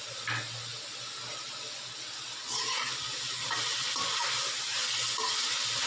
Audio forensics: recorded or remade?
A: recorded